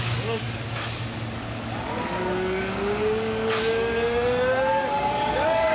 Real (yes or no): no